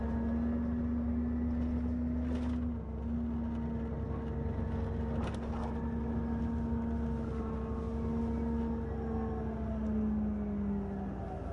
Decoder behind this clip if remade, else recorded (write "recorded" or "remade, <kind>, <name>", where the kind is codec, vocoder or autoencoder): recorded